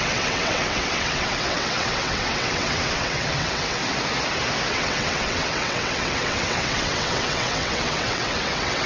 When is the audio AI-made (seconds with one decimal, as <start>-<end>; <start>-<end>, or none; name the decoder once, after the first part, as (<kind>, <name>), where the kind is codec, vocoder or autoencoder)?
0.0-3.8 (vocoder, WaveNeXt); 4.7-8.9